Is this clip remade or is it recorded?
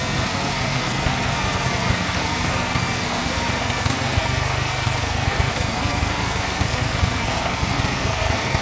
remade